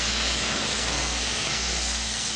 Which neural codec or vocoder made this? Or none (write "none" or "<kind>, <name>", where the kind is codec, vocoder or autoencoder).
codec, SNAC